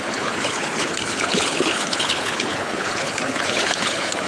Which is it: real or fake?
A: fake